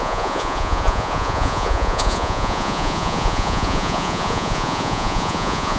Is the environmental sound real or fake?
fake